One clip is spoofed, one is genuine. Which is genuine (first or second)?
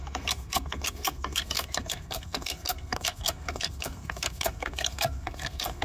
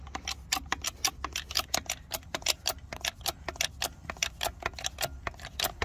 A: second